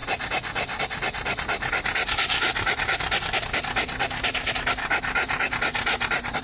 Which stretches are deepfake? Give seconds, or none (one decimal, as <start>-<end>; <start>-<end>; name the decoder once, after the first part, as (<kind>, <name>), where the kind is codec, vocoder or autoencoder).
none